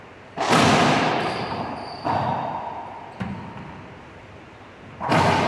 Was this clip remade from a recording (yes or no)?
no